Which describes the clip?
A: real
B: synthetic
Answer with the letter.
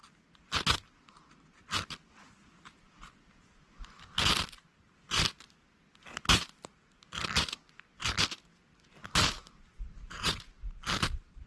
A